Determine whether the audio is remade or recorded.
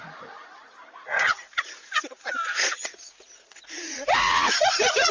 remade